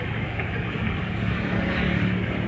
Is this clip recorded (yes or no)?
no